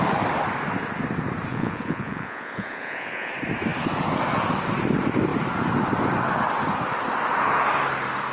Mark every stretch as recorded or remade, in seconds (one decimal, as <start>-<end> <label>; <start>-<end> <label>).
0.0-1.5 recorded; 1.5-3.3 remade; 3.3-8.3 recorded